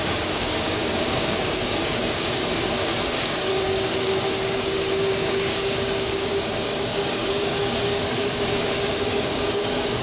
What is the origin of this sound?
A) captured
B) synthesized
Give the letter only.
B